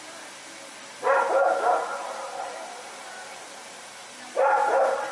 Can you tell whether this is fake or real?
real